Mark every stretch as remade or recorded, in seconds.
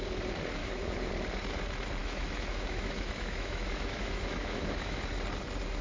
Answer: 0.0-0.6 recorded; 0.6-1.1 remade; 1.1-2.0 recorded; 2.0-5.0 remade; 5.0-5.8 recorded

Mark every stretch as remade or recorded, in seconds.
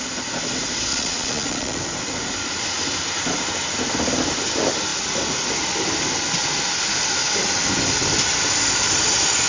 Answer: 0.0-0.9 recorded; 0.9-1.8 remade; 1.8-9.5 recorded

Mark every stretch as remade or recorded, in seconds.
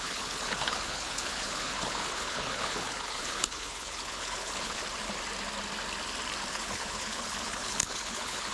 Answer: 0.0-4.8 remade; 4.8-6.5 recorded; 6.5-8.5 remade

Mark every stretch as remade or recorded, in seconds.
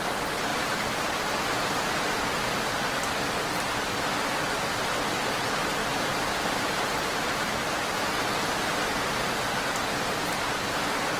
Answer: 0.0-0.5 recorded; 0.5-1.6 remade; 1.6-11.2 recorded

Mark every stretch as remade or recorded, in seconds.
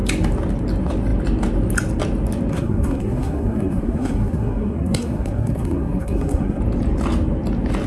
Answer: 0.0-2.5 recorded; 2.5-6.6 remade; 6.6-7.9 recorded